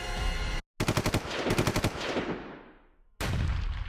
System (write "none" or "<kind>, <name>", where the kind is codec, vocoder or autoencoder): none